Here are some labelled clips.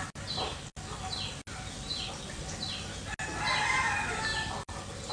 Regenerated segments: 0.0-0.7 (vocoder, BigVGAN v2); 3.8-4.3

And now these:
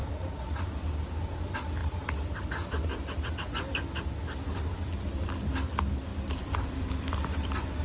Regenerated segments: 0.0-0.7 (vocoder, BigVGAN v2); 1.8-3.3; 6.1-7.1

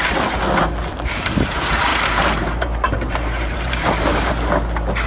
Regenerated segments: 1.9-4.3 (vocoder, BigVGAN v2)